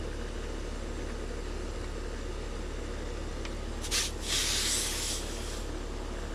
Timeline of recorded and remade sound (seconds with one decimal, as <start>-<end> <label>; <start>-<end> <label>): 0.0-6.3 recorded